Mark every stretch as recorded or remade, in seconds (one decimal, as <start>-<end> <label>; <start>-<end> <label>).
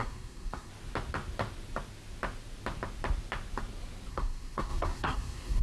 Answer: 0.0-0.7 remade; 0.7-4.1 recorded; 4.1-5.6 remade